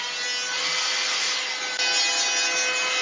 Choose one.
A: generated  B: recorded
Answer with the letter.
B